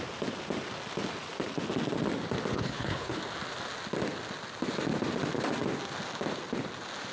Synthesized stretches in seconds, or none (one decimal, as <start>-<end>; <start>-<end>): 2.5-3.2